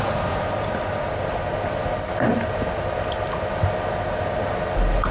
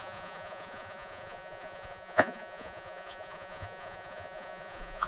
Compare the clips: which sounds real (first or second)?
first